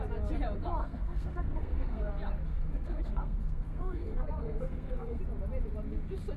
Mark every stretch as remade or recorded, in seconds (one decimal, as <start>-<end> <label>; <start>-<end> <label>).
0.0-0.8 recorded; 0.8-2.1 remade; 2.1-2.5 recorded; 2.5-5.2 remade; 5.2-6.4 recorded